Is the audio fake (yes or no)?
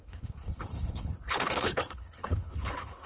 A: yes